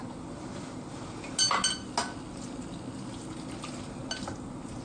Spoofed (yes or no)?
no